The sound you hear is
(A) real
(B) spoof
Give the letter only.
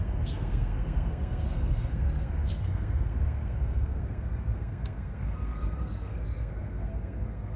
B